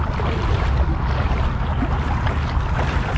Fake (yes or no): no